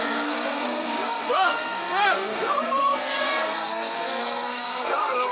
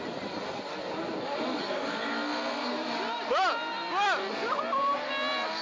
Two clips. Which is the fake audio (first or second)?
first